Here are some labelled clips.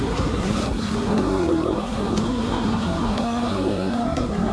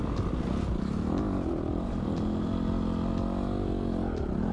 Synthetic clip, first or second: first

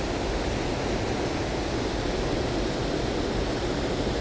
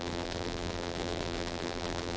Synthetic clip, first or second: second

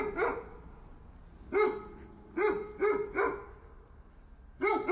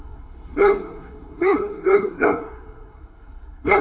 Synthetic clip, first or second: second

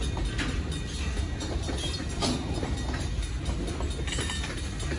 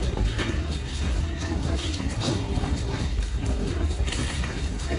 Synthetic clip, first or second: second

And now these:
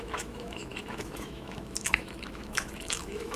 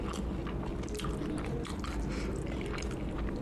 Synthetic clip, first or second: first